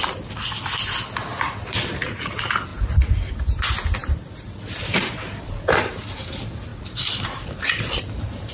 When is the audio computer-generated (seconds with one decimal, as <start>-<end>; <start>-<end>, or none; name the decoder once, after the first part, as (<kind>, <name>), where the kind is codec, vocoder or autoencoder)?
1.3-2.3 (vocoder, BigVGAN v2); 4.0-6.1; 6.7-8.5